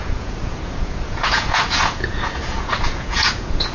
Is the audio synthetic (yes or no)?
yes